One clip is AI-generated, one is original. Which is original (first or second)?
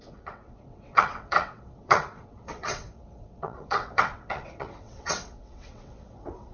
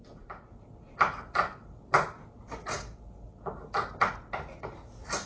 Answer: second